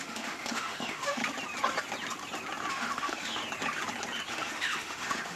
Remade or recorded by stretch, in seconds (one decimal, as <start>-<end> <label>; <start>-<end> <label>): 0.0-1.2 remade; 1.2-2.7 recorded; 2.7-3.4 remade; 3.4-4.3 recorded; 4.3-5.4 remade